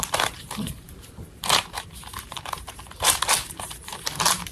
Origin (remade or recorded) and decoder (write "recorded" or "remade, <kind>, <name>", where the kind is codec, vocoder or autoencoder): remade, vocoder, BigVGAN v2